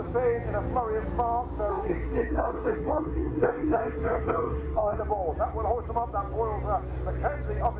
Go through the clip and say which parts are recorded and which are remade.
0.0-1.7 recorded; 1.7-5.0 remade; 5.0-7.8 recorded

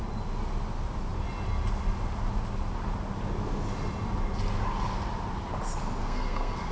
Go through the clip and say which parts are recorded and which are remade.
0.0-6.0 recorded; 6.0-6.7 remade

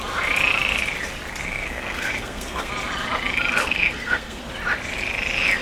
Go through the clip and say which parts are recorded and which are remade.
0.0-1.4 recorded; 1.4-2.7 remade; 2.7-3.6 recorded; 3.6-4.4 remade; 4.4-5.6 recorded

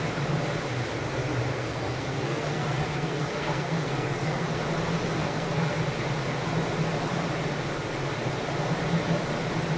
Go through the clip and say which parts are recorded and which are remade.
0.0-1.5 recorded; 1.5-4.6 remade; 4.6-5.2 recorded; 5.2-5.8 remade; 5.8-9.8 recorded

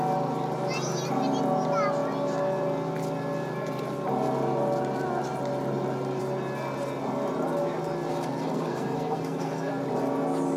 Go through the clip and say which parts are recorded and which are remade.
0.0-8.1 recorded; 8.1-9.7 remade; 9.7-10.6 recorded